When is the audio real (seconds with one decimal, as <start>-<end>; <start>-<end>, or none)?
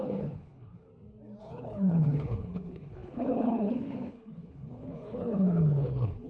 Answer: 0.9-1.4